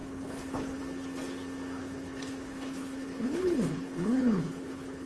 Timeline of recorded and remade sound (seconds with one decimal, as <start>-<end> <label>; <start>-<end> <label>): 0.0-0.8 remade; 0.8-1.8 recorded; 1.8-5.1 remade